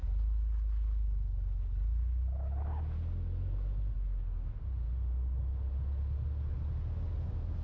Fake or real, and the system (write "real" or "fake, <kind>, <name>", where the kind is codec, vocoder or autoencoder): real